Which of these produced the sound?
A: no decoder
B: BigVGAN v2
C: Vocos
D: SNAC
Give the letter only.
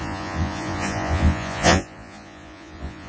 C